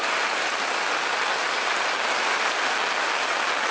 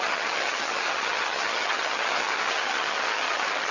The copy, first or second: second